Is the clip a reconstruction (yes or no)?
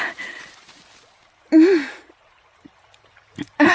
yes